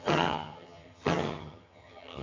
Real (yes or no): no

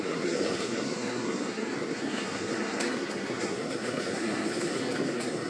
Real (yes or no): no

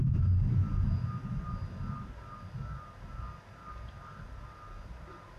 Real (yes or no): yes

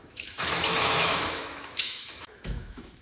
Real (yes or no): no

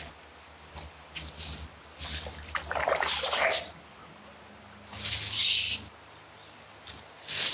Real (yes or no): yes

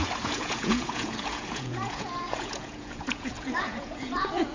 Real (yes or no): no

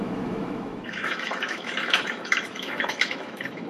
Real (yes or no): no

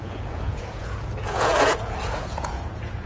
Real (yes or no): no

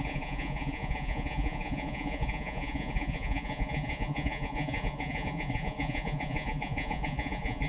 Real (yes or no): no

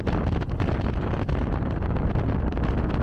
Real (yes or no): yes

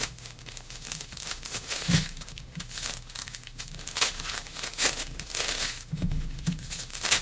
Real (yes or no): no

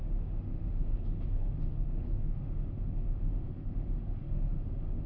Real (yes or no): no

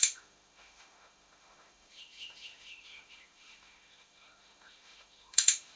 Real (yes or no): no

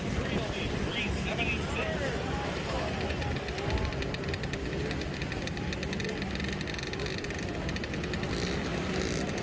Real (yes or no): yes